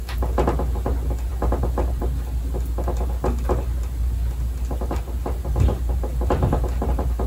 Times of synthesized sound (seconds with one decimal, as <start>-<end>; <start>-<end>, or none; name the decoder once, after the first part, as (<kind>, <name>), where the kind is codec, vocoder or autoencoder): none